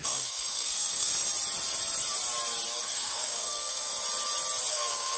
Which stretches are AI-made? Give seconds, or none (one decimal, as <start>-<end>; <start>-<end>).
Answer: 0.0-1.1; 2.8-3.9; 4.7-5.2